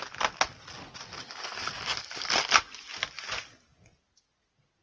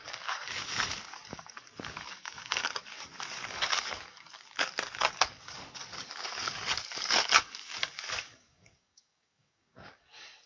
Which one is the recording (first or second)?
first